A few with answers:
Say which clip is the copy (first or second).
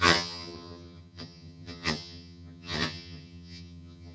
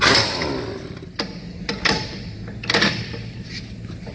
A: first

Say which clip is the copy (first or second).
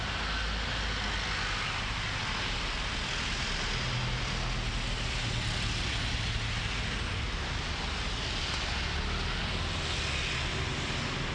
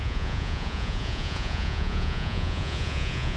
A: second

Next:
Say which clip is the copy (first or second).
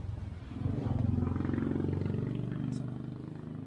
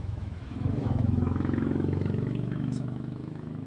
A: second